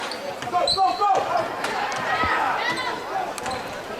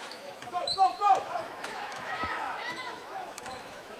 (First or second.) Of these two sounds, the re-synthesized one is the second